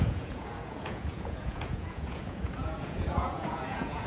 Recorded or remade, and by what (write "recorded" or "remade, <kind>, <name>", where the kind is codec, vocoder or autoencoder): remade, vocoder, Vocos